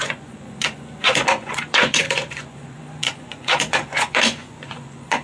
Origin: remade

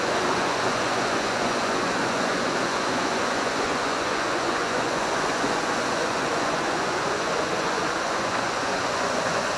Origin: remade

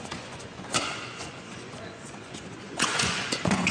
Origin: remade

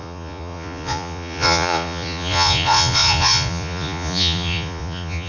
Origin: remade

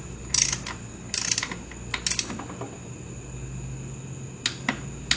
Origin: recorded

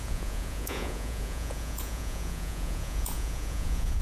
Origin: remade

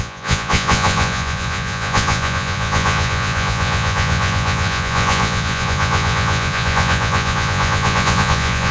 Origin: remade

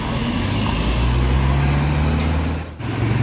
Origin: recorded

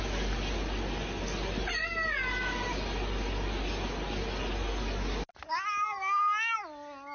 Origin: recorded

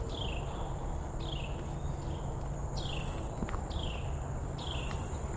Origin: recorded